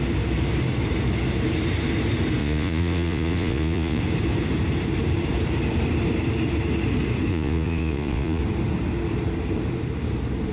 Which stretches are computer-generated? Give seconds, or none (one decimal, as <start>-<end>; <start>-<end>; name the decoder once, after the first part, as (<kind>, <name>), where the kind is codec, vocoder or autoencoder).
2.4-4.0 (vocoder, Vocos); 7.3-8.4